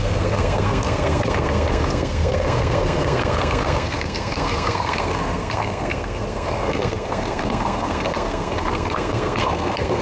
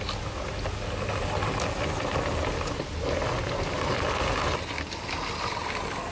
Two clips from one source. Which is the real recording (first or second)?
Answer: second